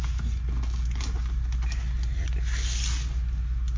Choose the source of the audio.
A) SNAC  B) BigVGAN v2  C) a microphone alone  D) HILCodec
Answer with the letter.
C